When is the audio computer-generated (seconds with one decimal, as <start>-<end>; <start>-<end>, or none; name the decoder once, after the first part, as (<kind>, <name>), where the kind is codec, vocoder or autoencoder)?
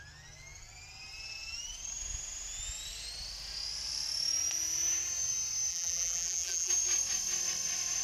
5.7-6.7 (vocoder, BigVGAN v2)